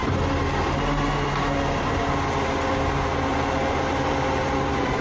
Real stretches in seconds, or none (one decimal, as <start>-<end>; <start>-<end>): 0.0-3.3